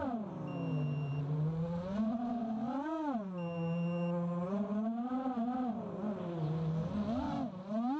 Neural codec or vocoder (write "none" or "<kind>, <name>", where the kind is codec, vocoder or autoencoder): none